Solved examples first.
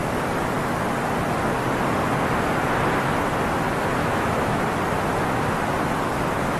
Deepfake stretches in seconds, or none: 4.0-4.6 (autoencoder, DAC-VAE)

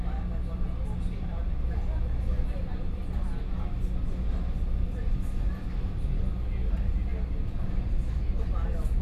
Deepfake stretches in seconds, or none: none